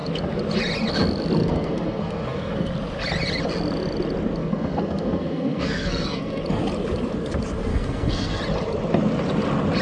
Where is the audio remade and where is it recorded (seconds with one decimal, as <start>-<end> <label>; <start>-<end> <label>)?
0.0-1.4 recorded; 1.4-2.7 remade; 2.7-4.4 recorded; 4.4-6.4 remade; 6.4-7.7 recorded; 7.7-8.4 remade; 8.4-9.8 recorded